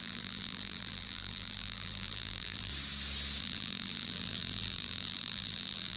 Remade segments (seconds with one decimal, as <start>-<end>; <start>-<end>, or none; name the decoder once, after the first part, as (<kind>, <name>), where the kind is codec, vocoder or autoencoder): 0.0-2.7 (vocoder, BigVGAN v2); 3.4-6.0

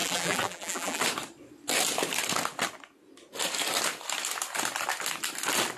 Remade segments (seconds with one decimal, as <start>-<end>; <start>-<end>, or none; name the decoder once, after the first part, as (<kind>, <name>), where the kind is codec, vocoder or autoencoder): 0.0-1.0 (vocoder, BigVGAN v2)

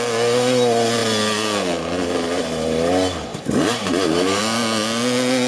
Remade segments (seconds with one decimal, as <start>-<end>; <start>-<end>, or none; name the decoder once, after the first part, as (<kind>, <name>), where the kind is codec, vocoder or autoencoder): 3.3-4.4 (vocoder, BigVGAN v2)

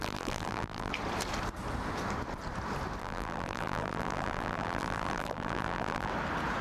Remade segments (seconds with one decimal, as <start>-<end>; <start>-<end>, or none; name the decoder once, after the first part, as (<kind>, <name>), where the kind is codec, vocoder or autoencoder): 0.0-0.9 (vocoder, BigVGAN v2); 3.0-6.1

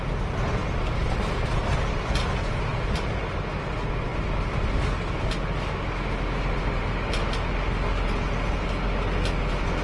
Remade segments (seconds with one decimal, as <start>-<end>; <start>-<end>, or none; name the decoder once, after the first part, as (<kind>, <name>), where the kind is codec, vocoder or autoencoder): 2.7-3.2 (vocoder, BigVGAN v2)

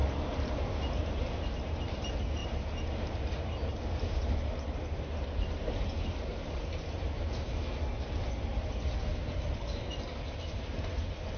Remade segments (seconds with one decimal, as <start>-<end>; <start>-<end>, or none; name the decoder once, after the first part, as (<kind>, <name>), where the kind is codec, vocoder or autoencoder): 0.0-0.6 (vocoder, BigVGAN v2); 1.2-2.0; 2.4-7.6; 9.1-11.4

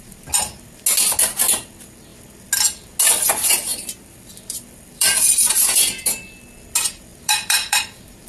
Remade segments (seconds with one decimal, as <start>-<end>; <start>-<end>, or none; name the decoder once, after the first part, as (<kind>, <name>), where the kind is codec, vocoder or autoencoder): 3.7-5.5 (vocoder, BigVGAN v2); 7.1-8.3

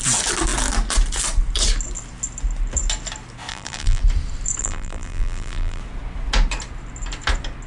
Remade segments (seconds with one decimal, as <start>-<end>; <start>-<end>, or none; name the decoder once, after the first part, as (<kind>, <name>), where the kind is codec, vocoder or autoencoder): 3.5-4.0 (vocoder, BigVGAN v2); 4.6-5.8